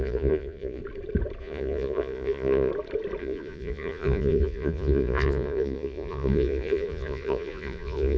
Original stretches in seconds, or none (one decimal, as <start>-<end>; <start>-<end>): 0.8-1.4; 2.7-3.2